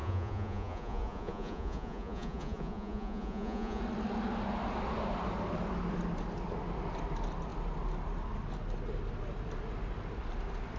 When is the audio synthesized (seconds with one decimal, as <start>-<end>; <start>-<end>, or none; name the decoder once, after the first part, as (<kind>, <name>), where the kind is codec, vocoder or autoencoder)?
0.0-3.8 (vocoder, Vocos)